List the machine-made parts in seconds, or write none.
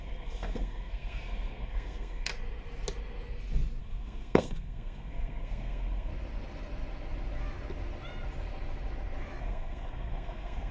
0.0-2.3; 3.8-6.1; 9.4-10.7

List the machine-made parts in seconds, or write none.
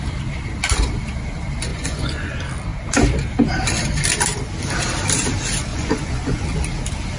1.7-2.3; 5.7-6.4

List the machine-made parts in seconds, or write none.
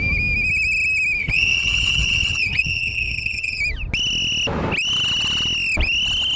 1.2-3.6